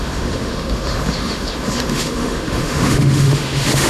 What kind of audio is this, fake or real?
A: fake